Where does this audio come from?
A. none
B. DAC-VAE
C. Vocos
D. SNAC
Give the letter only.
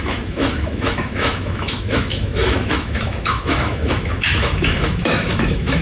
B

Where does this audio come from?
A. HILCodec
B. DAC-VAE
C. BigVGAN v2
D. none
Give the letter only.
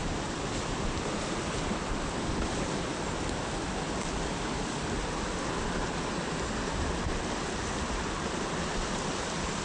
D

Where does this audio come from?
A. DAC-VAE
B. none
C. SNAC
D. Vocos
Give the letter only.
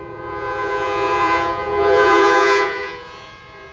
D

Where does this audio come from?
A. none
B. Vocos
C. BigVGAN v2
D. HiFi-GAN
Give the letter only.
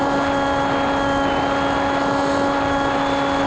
A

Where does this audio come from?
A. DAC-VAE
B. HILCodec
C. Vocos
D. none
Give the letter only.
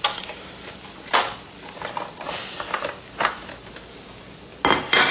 D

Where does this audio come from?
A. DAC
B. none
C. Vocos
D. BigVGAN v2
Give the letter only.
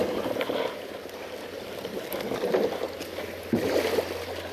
B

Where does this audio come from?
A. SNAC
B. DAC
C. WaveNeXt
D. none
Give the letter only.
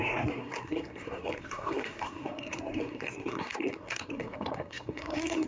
A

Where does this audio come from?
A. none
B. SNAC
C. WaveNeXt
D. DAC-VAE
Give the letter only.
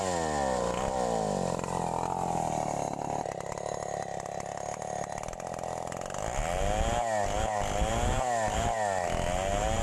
A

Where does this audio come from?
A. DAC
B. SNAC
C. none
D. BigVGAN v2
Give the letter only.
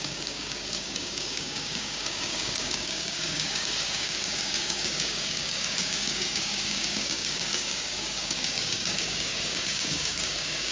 A